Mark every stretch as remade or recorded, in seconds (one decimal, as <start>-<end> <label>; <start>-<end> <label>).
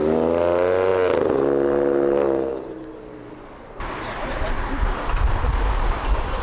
0.0-6.4 recorded